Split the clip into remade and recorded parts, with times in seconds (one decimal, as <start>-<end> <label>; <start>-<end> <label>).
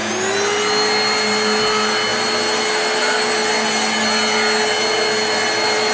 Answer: 0.0-5.9 recorded